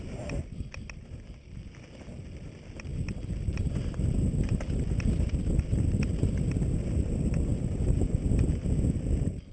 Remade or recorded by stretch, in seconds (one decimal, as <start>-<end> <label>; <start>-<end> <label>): 0.0-9.5 recorded